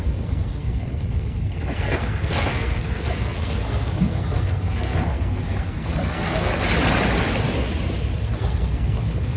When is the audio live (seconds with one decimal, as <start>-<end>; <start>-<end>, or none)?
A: 6.5-8.2